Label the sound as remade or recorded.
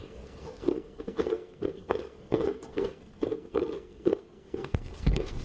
remade